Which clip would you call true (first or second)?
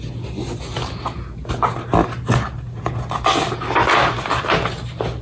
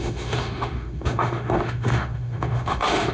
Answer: first